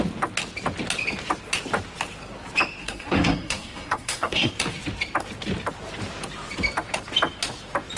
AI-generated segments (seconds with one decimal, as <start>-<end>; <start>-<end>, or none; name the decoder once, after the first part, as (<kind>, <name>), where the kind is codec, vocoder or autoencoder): 2.8-4.5 (codec, SNAC)